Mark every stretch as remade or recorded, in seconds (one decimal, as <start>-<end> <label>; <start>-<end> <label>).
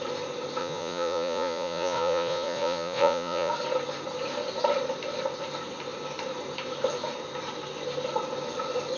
0.0-0.6 recorded; 0.6-3.5 remade; 3.5-9.0 recorded